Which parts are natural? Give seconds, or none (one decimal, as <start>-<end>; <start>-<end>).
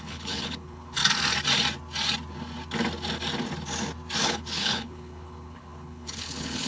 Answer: 1.0-4.2